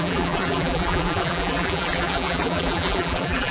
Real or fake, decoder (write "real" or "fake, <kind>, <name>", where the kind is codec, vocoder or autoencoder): fake, vocoder, BigVGAN v2